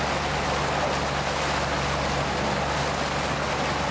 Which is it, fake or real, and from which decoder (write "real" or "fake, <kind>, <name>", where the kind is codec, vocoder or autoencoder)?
real